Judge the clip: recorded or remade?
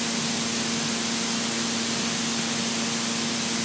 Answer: recorded